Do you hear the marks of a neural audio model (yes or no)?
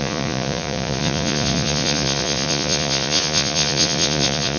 yes